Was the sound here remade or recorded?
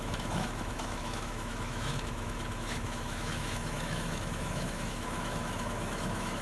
remade